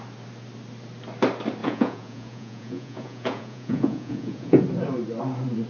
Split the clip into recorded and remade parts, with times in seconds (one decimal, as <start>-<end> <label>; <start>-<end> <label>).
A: 0.0-1.6 recorded; 1.6-4.6 remade; 4.6-5.7 recorded